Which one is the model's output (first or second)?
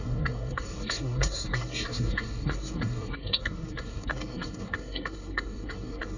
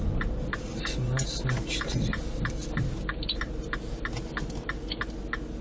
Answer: first